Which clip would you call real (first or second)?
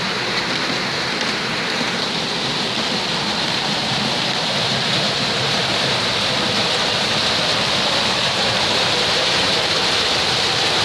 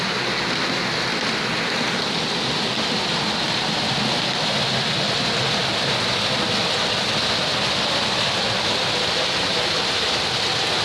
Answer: second